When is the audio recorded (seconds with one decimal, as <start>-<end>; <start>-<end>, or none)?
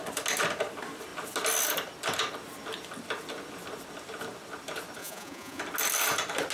0.0-5.0; 5.6-6.5